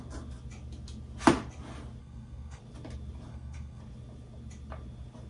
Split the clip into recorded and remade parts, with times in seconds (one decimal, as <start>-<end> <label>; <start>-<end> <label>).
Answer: 0.0-2.0 recorded; 2.0-2.6 remade; 2.6-3.3 recorded; 3.3-3.8 remade; 3.8-5.3 recorded